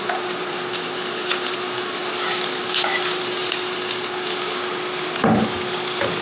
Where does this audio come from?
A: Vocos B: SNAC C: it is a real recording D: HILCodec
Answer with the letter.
C